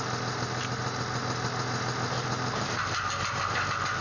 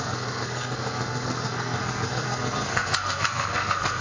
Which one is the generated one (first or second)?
second